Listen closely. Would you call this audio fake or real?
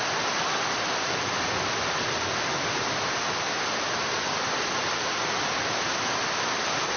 real